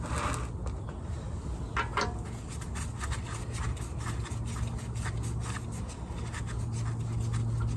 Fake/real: real